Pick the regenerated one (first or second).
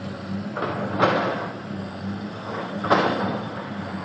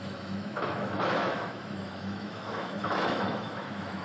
second